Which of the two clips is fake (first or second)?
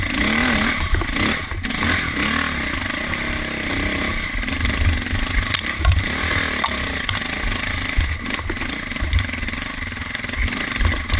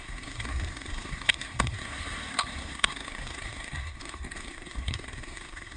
second